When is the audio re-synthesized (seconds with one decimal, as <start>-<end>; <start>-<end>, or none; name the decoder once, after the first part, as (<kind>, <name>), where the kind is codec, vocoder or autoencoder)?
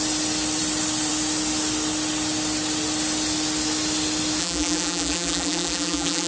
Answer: 4.4-6.3 (vocoder, BigVGAN v2)